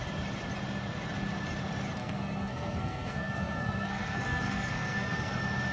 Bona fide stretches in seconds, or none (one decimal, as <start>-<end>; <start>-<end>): 0.0-2.0; 5.3-5.7